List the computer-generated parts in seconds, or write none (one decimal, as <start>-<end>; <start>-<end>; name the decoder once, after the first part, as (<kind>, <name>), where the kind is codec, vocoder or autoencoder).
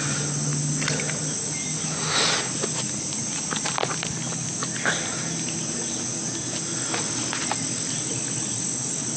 none